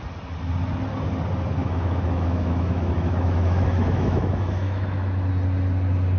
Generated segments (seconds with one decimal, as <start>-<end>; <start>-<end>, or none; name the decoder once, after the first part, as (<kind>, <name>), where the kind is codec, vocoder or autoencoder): 1.6-5.3 (autoencoder, DAC-VAE)